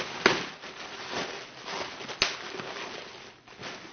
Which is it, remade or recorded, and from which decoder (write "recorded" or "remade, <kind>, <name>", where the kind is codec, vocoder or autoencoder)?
recorded